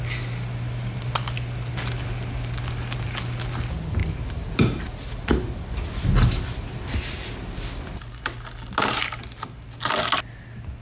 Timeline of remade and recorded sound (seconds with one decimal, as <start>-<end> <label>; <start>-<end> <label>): 0.0-10.8 recorded